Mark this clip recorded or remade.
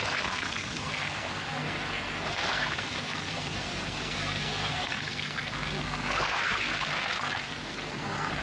remade